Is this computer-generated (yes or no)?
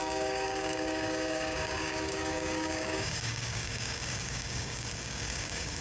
yes